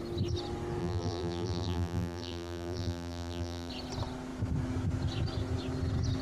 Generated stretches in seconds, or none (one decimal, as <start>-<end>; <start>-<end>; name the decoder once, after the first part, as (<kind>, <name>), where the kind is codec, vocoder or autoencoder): 0.8-3.7 (vocoder, BigVGAN v2)